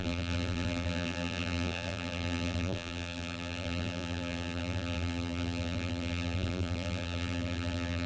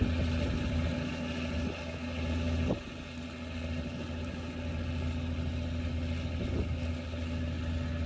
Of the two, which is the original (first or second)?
second